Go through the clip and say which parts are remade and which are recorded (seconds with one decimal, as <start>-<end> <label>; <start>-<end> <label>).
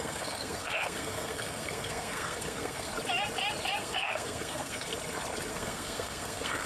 0.0-2.9 remade; 2.9-3.8 recorded; 3.8-4.9 remade; 4.9-5.5 recorded; 5.5-6.7 remade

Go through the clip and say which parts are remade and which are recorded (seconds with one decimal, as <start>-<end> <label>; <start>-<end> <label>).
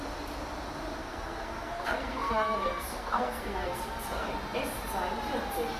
0.0-1.0 recorded; 1.0-4.3 remade; 4.3-5.8 recorded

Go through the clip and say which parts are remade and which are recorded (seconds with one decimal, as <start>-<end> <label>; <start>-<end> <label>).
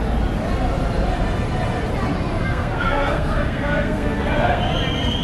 0.0-2.4 recorded; 2.4-4.6 remade; 4.6-5.2 recorded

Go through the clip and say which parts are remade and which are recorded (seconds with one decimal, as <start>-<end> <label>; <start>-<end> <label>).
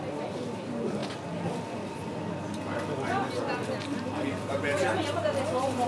0.0-5.9 recorded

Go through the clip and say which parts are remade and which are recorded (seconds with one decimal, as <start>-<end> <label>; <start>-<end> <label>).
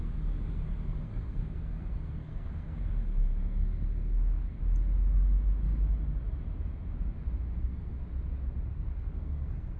0.0-4.6 remade; 4.6-7.6 recorded; 7.6-8.0 remade; 8.0-8.7 recorded; 8.7-9.8 remade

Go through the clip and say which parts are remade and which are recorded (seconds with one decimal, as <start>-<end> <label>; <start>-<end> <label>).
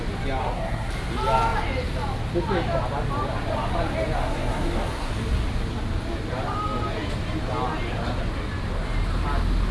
0.0-0.4 recorded; 0.4-0.9 remade; 0.9-4.2 recorded; 4.2-5.1 remade; 5.1-9.7 recorded